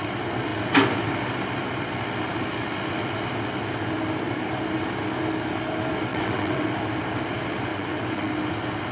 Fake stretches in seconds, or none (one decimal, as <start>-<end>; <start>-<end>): 6.1-6.7; 7.7-8.3